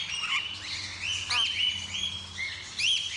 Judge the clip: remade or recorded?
recorded